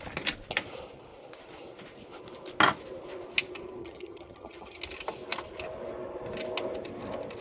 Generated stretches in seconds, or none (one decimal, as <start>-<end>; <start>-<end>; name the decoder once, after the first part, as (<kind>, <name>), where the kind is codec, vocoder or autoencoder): 3.8-4.8 (vocoder, HiFi-GAN)